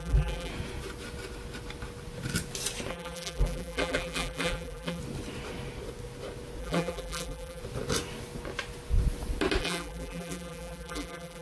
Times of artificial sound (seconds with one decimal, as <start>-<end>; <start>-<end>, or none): 0.0-0.5; 2.9-5.0; 6.6-7.6; 9.6-11.4